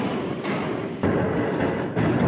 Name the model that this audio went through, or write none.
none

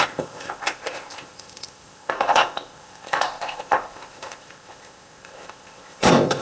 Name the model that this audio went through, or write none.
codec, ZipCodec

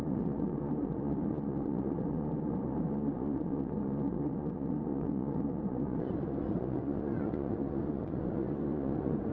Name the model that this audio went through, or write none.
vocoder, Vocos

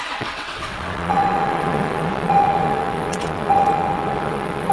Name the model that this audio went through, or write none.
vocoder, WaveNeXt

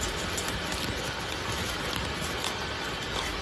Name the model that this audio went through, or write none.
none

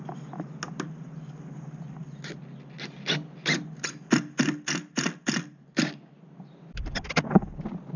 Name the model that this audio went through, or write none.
none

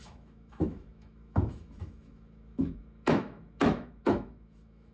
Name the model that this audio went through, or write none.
autoencoder, DAC-VAE